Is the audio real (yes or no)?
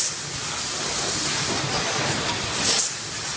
yes